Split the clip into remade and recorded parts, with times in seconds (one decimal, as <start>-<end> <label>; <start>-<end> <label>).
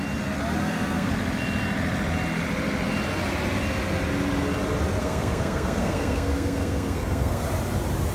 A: 0.0-0.6 recorded; 0.6-1.1 remade; 1.1-5.0 recorded; 5.0-7.4 remade; 7.4-8.1 recorded